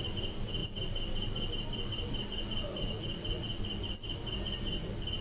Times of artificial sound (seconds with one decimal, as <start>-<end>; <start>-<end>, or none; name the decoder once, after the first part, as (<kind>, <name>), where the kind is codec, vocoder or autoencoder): 2.6-3.6 (vocoder, Vocos)